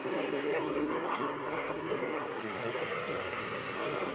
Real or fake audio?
fake